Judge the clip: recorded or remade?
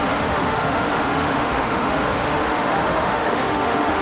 remade